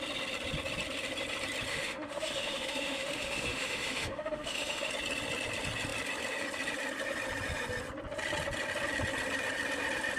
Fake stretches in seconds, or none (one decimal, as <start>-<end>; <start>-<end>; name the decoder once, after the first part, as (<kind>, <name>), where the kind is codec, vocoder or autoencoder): 1.7-4.9 (autoencoder, DAC-VAE)